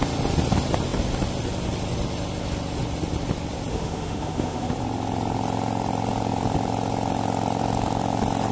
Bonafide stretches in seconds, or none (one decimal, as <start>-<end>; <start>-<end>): 0.0-3.7; 4.7-8.5